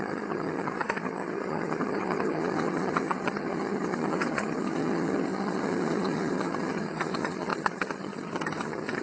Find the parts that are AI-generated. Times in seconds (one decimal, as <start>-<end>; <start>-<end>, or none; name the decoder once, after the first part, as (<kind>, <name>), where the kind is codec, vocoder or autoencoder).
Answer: 0.0-9.0 (vocoder, HiFi-GAN)